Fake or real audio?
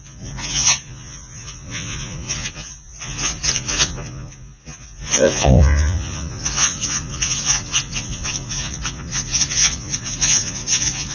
fake